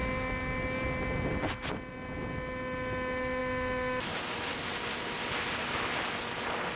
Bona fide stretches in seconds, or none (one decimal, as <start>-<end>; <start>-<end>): 0.0-6.8